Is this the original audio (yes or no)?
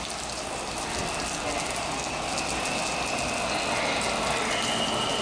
yes